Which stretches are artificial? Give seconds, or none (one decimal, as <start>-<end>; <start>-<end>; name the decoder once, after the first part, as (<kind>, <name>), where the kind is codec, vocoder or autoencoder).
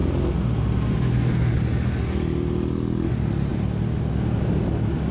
none